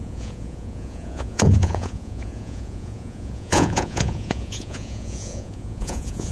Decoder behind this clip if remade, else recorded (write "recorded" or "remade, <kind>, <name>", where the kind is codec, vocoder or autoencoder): remade, vocoder, Vocos